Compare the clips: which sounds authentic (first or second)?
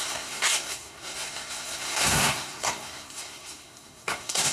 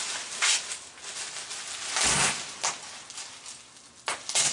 second